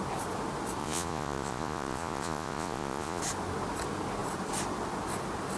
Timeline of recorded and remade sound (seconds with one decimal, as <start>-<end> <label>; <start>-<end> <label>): 0.0-0.8 recorded; 0.8-3.2 remade; 3.2-5.6 recorded